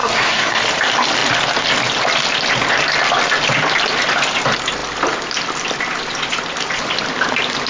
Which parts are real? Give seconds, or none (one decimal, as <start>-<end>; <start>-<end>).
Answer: 0.6-7.7

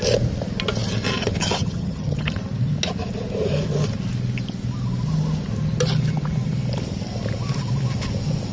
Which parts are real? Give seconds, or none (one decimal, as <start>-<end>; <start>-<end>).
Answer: 0.0-1.6; 2.3-8.5

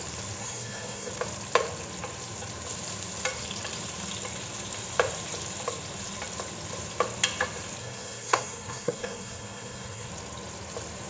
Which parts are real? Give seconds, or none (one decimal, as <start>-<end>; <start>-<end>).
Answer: 0.0-0.4; 1.1-7.8; 10.1-11.1

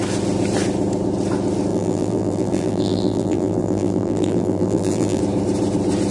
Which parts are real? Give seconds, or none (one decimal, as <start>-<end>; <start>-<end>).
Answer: 0.0-1.7; 5.2-6.1

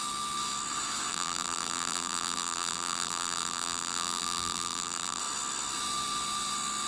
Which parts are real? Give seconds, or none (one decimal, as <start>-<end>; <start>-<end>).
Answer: 0.0-1.1; 5.2-6.9

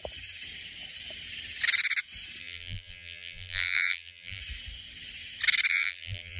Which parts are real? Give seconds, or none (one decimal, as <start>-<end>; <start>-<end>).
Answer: 0.0-2.4; 4.4-5.7